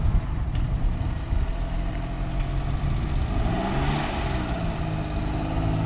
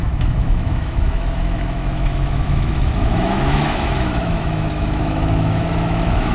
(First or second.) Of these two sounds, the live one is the first